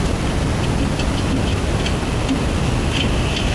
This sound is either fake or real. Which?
real